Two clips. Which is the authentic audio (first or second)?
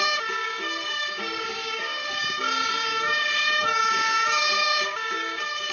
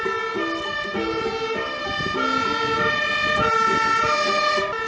second